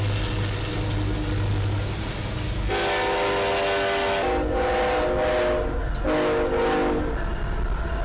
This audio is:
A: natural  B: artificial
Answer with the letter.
A